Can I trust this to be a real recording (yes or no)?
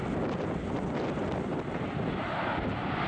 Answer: yes